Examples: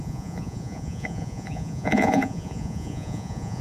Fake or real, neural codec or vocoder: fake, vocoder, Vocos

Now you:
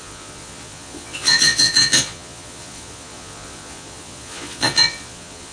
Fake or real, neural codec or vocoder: fake, vocoder, Vocos